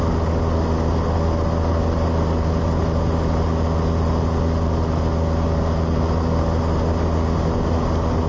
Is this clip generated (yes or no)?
no